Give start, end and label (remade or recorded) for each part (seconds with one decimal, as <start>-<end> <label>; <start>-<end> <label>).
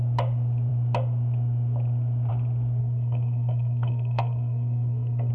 0.0-2.8 recorded; 2.8-5.3 remade